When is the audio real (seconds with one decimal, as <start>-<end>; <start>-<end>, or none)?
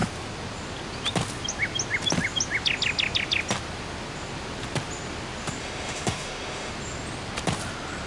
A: 0.0-5.6; 6.7-8.1